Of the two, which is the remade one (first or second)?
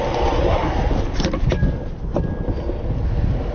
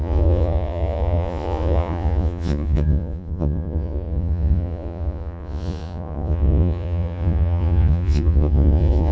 second